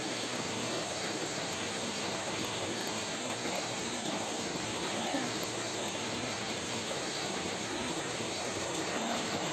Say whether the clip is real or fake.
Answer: fake